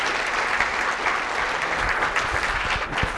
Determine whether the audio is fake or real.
real